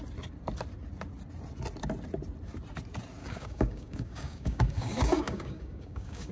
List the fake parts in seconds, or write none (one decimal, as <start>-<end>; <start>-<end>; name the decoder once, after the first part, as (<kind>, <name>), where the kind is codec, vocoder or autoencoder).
3.2-6.3 (codec, DAC)